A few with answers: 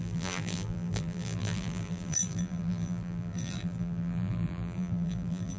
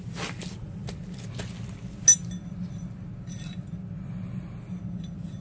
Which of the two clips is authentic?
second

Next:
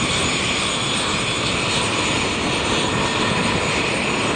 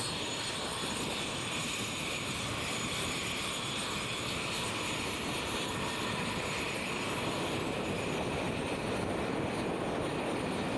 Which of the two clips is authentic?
first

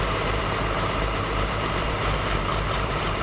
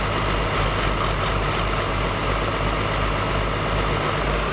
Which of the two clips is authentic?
second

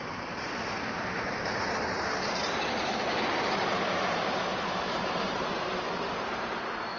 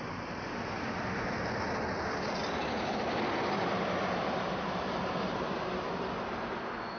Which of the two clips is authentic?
second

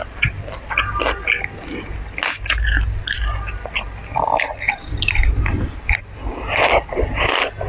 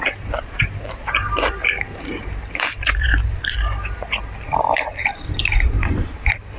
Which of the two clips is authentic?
first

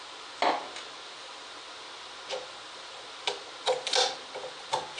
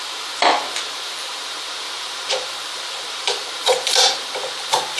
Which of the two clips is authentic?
first